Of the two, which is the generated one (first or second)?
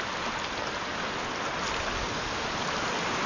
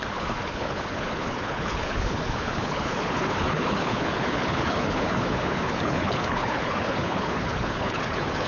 second